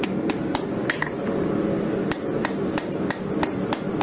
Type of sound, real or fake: real